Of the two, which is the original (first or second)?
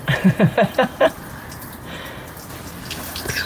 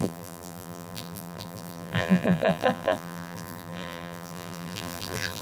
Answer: first